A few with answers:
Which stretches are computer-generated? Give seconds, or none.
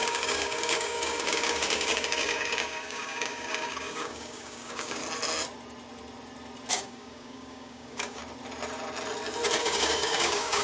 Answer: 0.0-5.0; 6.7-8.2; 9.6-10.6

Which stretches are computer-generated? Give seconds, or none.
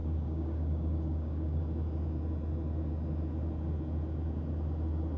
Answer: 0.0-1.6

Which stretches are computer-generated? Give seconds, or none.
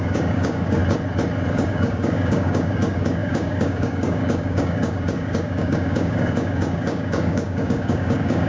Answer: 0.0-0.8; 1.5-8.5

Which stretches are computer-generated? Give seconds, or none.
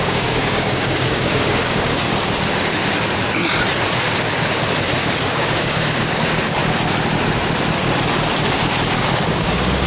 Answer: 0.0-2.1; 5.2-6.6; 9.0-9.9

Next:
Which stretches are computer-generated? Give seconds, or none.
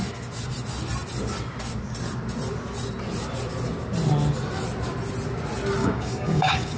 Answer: 5.8-6.8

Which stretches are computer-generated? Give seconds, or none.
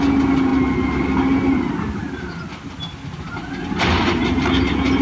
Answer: none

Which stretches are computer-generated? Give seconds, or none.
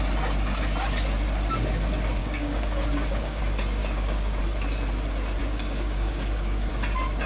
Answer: 2.2-3.4; 3.8-4.4; 5.4-6.7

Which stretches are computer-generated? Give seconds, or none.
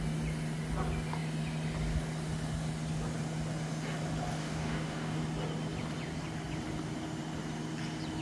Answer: 4.4-5.2